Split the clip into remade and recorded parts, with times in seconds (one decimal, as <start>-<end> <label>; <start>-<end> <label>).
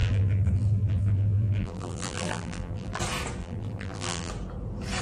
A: 0.0-3.0 remade; 3.0-3.4 recorded; 3.4-4.3 remade; 4.3-5.0 recorded